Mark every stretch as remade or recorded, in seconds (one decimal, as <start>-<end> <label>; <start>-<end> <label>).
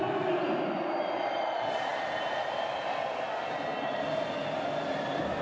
0.0-5.4 recorded